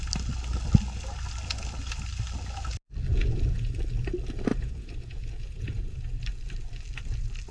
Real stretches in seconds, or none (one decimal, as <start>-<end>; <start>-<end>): 0.0-3.1; 3.7-4.5; 6.2-7.5